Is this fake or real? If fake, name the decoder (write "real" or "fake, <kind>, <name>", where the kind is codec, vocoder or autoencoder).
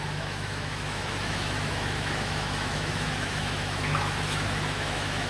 fake, autoencoder, DAC-VAE